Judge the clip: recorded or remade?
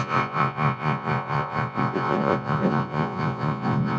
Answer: remade